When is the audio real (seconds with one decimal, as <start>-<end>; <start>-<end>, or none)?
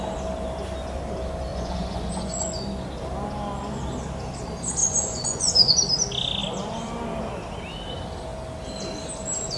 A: 0.0-1.5; 2.6-4.8; 5.7-9.6